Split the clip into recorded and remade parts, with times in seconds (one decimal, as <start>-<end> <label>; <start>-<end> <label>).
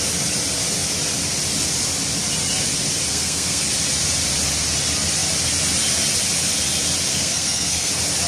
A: 0.0-3.1 recorded; 3.1-3.6 remade; 3.6-7.1 recorded; 7.1-7.9 remade; 7.9-8.3 recorded